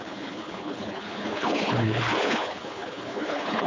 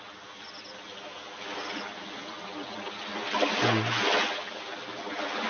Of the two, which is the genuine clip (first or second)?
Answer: second